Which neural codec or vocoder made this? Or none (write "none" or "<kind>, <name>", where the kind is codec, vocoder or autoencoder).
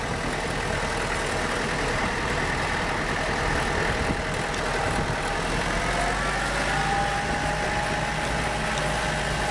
none